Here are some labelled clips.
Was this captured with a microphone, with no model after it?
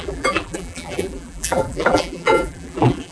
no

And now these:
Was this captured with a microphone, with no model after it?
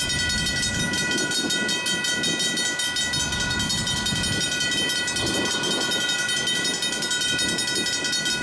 yes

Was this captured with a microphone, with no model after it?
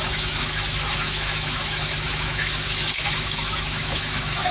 no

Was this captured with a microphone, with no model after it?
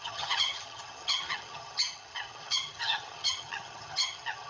no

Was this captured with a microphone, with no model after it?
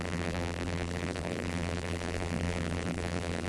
no